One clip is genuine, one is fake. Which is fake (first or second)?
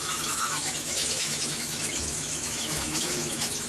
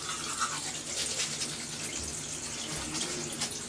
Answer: first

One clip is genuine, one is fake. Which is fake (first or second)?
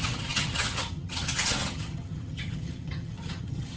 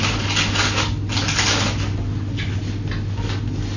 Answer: first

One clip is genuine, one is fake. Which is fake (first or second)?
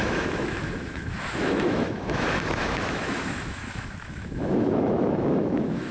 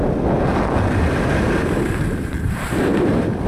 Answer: first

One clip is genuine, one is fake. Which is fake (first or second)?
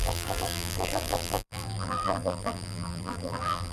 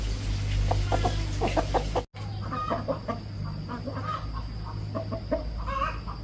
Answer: first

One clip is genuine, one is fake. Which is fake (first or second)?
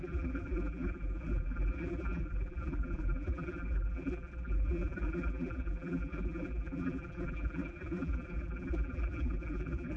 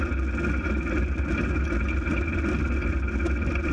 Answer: first